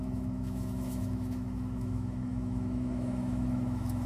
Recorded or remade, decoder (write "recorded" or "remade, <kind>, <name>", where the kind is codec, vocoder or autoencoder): remade, autoencoder, DAC-VAE